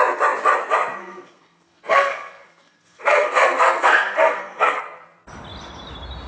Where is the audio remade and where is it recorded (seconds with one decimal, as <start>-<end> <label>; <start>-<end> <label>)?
0.0-1.0 recorded; 1.0-4.8 remade; 4.8-6.3 recorded